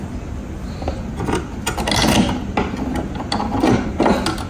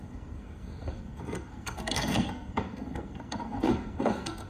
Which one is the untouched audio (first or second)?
first